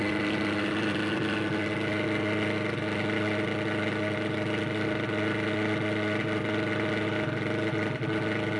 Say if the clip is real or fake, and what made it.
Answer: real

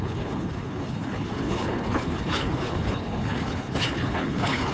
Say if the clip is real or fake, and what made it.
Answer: fake, codec, HILCodec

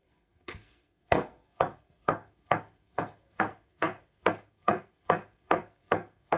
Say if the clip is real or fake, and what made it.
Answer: fake, codec, SNAC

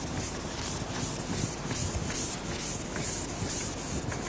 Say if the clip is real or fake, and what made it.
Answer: real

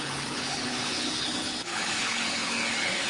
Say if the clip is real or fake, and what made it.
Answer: fake, codec, HILCodec